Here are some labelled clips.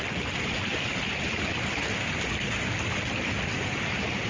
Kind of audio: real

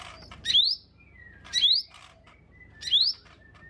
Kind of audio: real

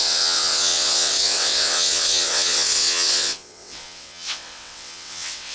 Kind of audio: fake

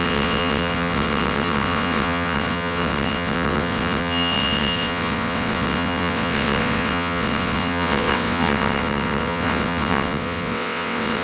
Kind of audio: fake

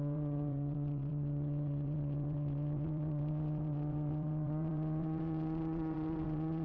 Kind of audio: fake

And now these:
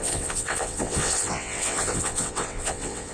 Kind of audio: fake